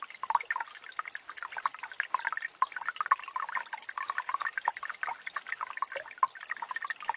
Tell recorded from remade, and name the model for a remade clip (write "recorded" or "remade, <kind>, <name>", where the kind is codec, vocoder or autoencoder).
recorded